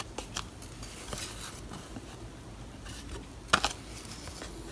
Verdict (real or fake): real